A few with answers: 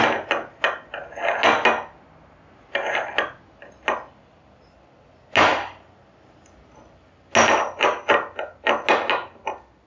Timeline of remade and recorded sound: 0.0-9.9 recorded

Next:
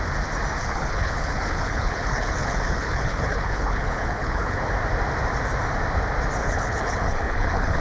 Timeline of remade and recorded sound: 0.0-0.6 recorded; 0.6-4.7 remade; 4.7-6.4 recorded; 6.4-7.8 remade